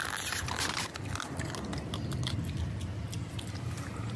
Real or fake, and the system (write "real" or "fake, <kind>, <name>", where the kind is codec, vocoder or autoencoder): real